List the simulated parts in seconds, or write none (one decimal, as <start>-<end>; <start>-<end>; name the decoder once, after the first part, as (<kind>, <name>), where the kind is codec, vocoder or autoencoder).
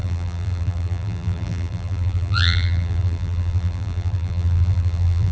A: 0.0-5.3 (vocoder, BigVGAN v2)